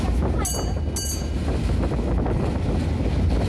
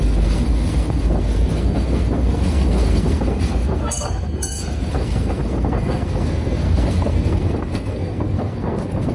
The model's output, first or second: second